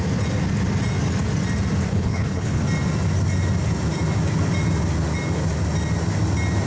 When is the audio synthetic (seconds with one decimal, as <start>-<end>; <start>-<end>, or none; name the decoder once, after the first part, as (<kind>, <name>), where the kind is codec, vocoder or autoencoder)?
1.9-2.6 (codec, HILCodec)